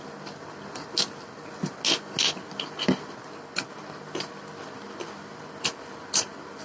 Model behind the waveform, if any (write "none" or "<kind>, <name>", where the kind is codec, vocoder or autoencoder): none